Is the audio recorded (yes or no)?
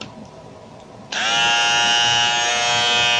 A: yes